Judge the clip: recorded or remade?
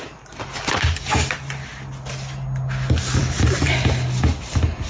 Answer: recorded